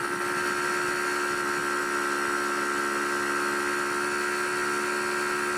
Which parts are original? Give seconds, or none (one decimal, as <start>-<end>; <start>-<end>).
0.0-5.6